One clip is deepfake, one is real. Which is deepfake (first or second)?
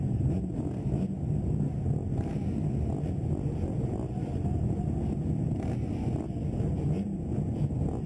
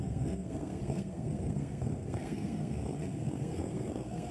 second